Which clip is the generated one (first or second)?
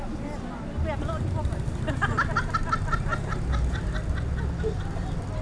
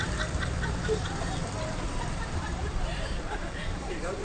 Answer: second